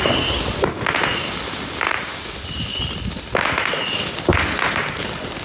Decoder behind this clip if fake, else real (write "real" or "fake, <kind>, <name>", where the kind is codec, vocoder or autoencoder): real